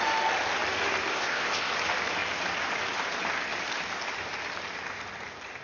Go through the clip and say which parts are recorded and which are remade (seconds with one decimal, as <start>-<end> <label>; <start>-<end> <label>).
0.0-1.1 recorded; 1.1-1.7 remade; 1.7-5.6 recorded